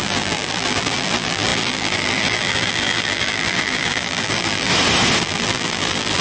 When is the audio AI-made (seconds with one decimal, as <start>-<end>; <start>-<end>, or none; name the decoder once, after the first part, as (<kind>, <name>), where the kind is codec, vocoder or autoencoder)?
0.0-4.7 (vocoder, BigVGAN v2); 5.2-6.2

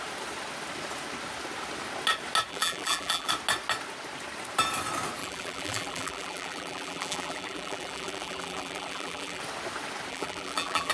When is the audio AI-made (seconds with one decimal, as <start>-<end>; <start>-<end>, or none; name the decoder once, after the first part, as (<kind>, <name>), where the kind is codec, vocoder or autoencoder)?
2.5-3.3 (vocoder, BigVGAN v2); 5.2-9.4; 10.1-10.9